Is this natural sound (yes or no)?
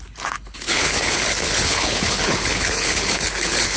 no